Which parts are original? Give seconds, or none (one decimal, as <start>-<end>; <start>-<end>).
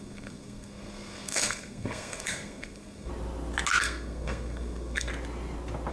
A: 3.1-3.8; 5.1-5.9